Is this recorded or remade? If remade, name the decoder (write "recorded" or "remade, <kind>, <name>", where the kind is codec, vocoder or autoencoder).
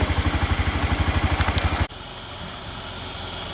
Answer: recorded